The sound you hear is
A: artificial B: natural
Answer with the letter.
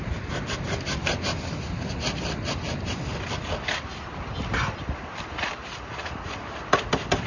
B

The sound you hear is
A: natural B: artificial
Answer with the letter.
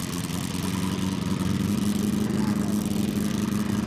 A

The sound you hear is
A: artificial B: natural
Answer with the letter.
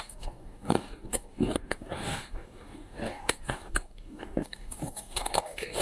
A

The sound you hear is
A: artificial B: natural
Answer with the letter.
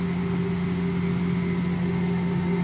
B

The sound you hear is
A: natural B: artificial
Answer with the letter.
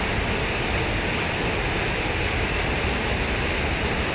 A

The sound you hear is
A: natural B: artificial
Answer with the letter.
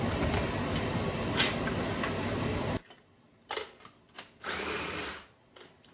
A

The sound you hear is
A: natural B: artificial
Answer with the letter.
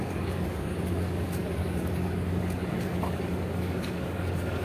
B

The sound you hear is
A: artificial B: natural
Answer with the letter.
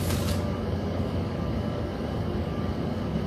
A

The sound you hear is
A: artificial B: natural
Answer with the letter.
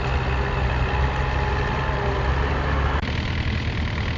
B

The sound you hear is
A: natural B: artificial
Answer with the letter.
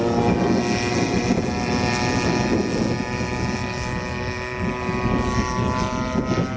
A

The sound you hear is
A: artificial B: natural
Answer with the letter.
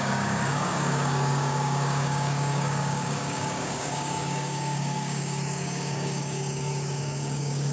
A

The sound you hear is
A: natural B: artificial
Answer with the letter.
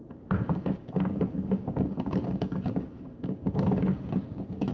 B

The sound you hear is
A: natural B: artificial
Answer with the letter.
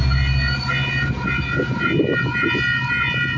A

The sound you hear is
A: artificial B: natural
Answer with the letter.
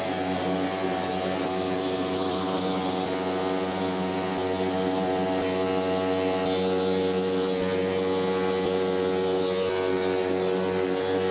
B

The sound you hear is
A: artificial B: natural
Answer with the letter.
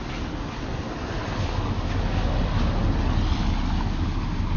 B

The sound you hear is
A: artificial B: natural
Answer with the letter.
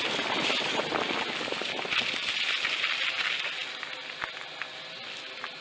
B